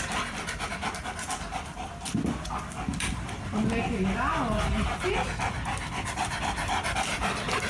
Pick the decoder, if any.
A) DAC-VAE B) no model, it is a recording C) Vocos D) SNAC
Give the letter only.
B